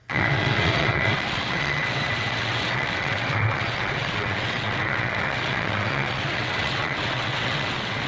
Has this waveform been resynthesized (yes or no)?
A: yes